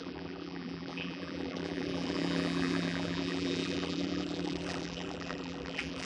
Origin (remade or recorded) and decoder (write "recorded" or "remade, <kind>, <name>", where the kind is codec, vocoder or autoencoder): remade, vocoder, BigVGAN v2